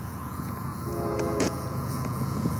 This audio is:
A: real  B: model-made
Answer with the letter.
B